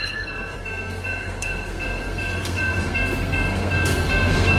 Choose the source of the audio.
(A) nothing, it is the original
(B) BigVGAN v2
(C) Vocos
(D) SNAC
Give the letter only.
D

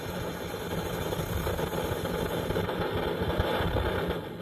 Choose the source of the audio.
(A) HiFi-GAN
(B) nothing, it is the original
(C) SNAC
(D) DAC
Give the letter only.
B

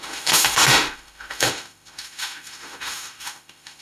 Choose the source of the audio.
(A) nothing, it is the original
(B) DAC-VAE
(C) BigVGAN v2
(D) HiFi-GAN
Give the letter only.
B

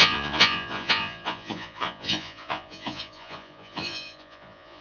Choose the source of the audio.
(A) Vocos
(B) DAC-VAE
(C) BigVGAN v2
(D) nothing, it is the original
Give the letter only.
A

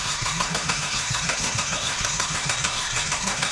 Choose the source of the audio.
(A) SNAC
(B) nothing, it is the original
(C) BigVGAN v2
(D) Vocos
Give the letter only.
A